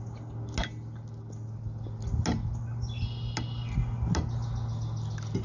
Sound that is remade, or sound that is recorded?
recorded